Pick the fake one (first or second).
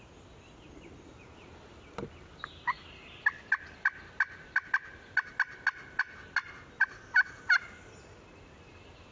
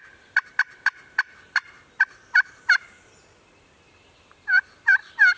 second